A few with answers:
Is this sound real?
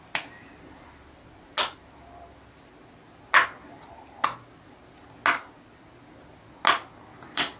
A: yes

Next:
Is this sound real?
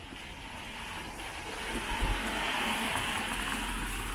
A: yes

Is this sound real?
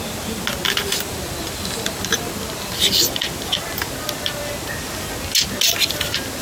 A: yes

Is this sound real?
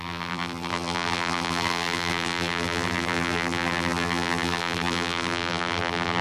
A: no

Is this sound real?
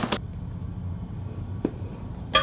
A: yes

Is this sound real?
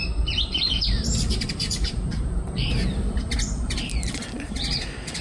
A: no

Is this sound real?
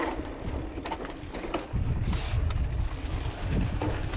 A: yes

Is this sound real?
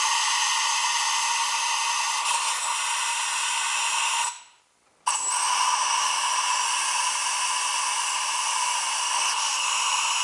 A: yes